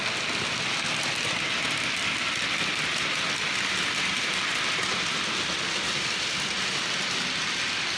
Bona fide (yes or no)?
yes